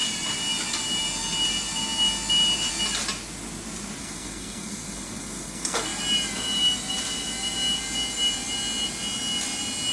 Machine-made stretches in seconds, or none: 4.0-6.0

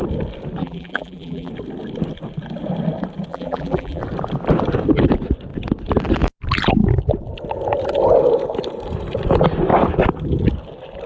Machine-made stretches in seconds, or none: 0.6-1.5; 3.3-4.0

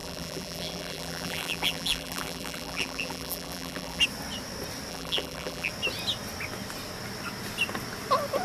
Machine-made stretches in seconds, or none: 0.0-4.0; 4.9-5.7

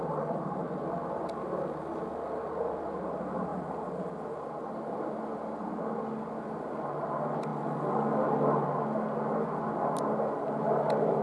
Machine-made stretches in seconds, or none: none

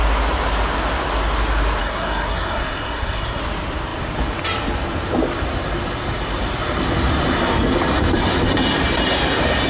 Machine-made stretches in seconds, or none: 1.8-3.4

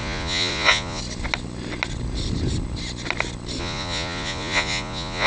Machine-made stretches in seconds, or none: 0.0-1.0; 3.6-5.3

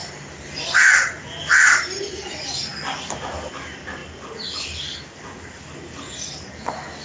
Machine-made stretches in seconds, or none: none

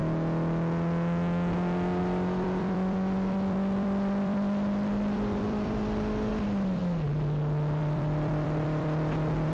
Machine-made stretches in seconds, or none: 2.0-6.8; 7.8-9.5